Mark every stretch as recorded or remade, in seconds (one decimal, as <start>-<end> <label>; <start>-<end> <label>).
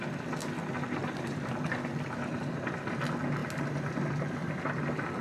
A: 0.0-1.0 recorded; 1.0-3.0 remade; 3.0-5.2 recorded